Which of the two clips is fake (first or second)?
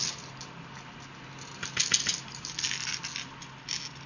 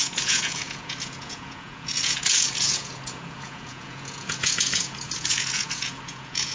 second